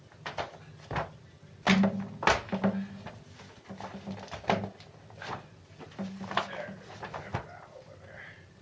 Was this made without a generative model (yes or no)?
yes